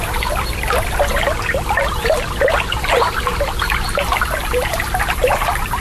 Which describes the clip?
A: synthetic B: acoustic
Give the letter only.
B